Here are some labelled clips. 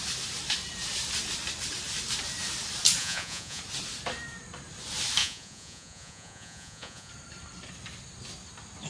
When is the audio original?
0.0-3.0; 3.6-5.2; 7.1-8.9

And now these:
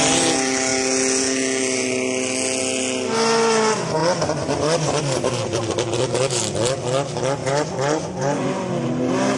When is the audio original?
0.0-7.4; 8.5-9.4

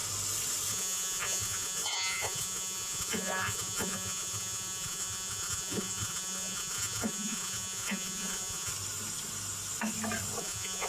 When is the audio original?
0.0-0.7; 8.7-10.4

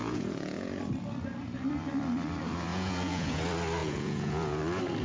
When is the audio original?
0.8-2.7; 3.4-3.8; 4.6-5.0

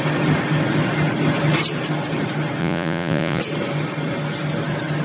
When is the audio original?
0.0-2.6; 3.4-5.0

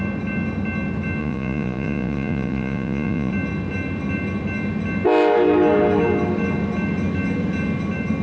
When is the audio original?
0.0-1.2; 3.3-8.2